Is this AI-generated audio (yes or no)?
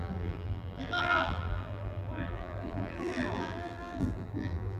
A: yes